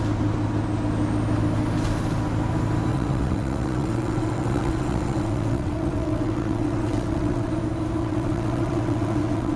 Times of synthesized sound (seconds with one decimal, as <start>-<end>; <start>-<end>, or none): 2.9-7.5; 8.0-9.6